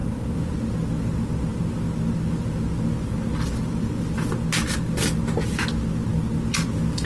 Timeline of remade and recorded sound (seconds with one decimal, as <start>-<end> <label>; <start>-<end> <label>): 0.0-7.1 recorded